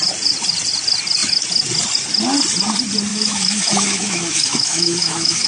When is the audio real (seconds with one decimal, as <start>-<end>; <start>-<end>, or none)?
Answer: 0.0-3.1